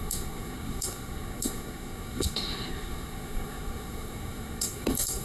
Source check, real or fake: fake